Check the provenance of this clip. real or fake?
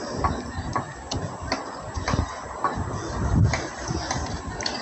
real